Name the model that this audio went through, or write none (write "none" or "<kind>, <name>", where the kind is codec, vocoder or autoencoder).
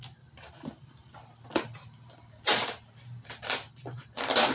none